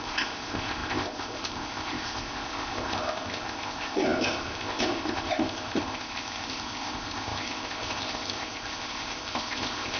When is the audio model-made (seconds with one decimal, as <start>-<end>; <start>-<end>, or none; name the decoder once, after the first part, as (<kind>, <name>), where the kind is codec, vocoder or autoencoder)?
0.0-10.0 (codec, ZipCodec)